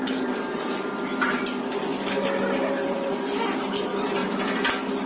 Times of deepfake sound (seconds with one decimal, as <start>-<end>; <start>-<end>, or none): none